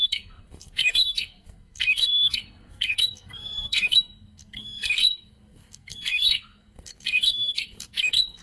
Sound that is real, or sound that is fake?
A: fake